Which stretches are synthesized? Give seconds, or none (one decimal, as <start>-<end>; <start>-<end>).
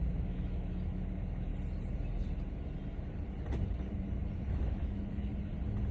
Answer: 0.0-1.5; 4.5-5.3